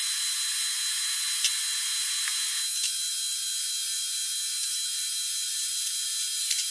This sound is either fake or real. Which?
real